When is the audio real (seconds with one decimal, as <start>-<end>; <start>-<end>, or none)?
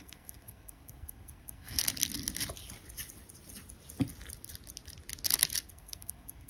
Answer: 1.8-5.7